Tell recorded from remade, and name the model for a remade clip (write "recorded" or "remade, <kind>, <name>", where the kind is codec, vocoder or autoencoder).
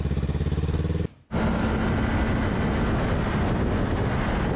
recorded